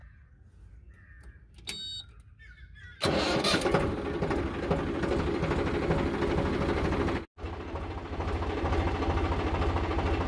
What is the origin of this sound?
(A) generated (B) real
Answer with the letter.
B